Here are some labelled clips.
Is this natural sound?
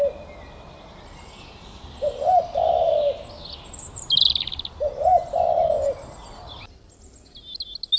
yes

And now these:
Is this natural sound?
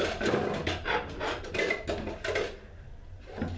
yes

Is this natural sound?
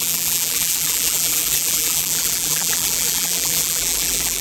no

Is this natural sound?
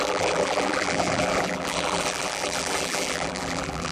no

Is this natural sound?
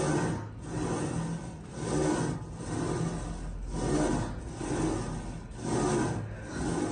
yes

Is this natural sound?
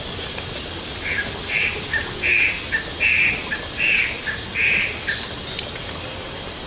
yes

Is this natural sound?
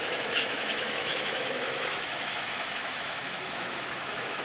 no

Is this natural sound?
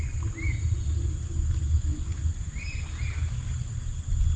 yes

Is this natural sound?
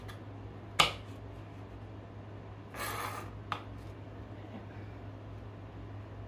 yes